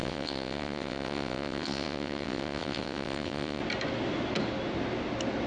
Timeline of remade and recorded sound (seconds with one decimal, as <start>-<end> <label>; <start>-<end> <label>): 0.0-3.6 remade; 3.6-5.5 recorded